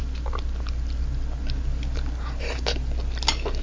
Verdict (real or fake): real